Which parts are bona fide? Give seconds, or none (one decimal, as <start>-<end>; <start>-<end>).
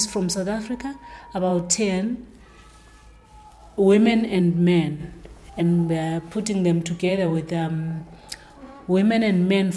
0.0-3.6; 4.4-5.0; 5.6-7.1; 8.0-9.8